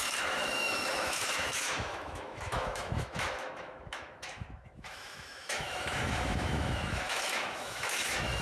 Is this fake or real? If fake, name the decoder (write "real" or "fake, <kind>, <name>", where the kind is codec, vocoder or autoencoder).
fake, autoencoder, DAC-VAE